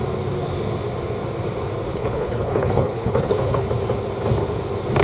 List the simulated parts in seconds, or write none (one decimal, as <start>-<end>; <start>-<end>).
1.9-3.7